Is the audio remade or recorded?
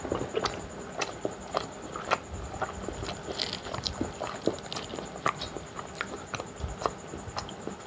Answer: recorded